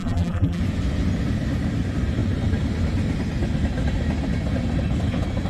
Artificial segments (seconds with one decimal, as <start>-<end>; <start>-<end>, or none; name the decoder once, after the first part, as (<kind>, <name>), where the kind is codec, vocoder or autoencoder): 0.0-0.6 (vocoder, BigVGAN v2)